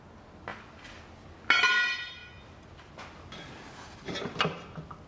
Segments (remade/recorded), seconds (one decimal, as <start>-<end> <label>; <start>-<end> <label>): 0.0-5.1 recorded